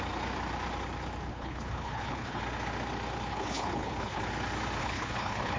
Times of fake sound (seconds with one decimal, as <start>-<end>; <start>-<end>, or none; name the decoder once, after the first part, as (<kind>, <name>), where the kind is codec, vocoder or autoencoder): 1.3-2.4 (codec, HILCodec); 3.3-4.2; 4.8-5.6